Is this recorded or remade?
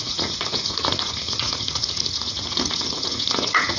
remade